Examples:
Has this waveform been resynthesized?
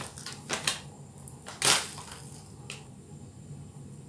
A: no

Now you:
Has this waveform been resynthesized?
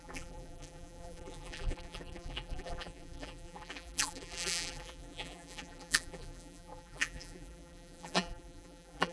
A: yes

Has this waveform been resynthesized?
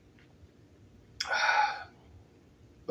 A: no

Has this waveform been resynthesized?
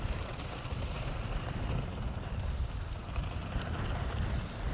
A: no